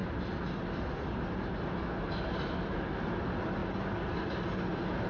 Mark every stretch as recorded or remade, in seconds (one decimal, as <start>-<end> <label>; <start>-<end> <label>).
0.0-5.1 recorded